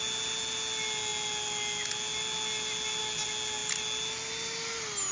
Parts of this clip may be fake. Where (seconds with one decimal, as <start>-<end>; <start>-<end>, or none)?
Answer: none

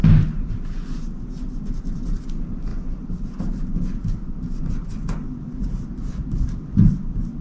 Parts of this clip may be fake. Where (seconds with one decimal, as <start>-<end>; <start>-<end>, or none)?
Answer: none

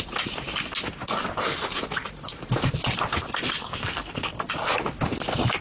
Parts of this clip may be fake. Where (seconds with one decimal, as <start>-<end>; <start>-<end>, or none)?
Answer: 3.6-4.4

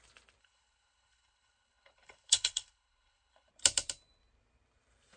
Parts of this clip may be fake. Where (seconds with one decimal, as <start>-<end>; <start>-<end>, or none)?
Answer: 0.4-3.5

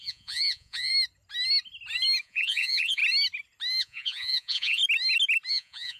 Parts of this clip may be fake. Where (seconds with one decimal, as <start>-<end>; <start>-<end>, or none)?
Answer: 0.0-0.9; 2.2-3.0; 3.8-4.8; 5.5-6.0

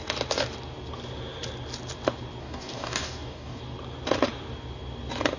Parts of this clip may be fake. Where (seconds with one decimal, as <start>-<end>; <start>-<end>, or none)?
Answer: 2.4-3.6

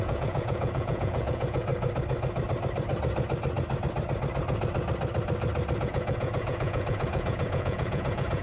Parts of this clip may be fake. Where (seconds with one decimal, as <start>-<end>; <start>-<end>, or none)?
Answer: 0.0-1.7; 5.8-8.4

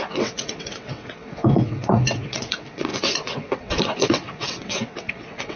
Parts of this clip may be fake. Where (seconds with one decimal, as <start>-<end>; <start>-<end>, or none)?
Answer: 0.0-5.6